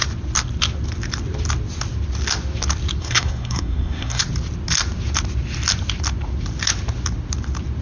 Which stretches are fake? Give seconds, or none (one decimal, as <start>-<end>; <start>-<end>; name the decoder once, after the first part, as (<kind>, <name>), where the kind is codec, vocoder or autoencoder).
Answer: 3.0-4.2 (codec, SNAC)